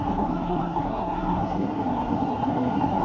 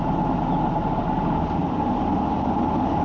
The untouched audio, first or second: second